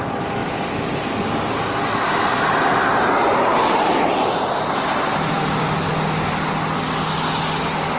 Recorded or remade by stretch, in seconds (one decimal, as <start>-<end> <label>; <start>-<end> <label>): 0.0-0.4 recorded; 0.4-1.1 remade; 1.1-2.9 recorded; 2.9-5.9 remade; 5.9-8.0 recorded